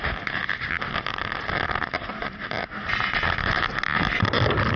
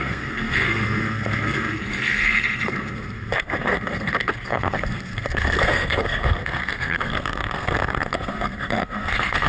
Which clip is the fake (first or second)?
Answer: second